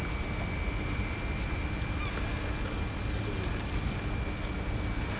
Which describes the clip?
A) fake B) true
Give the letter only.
B